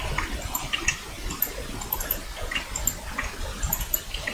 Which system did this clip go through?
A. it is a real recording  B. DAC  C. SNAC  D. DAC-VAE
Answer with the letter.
A